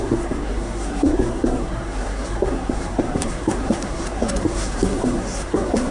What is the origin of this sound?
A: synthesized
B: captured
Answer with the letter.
A